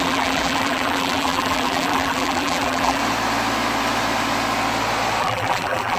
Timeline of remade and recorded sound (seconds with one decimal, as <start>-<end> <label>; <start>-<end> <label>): 0.0-3.0 remade; 3.0-5.2 recorded; 5.2-6.0 remade